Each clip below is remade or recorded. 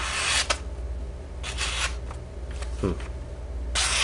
recorded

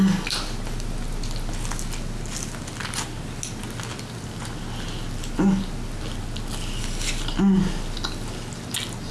recorded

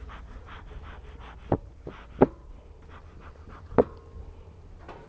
recorded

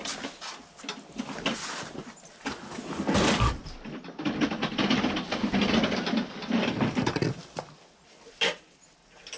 recorded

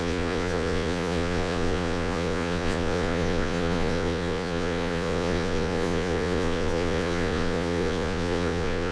remade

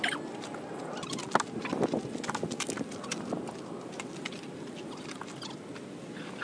recorded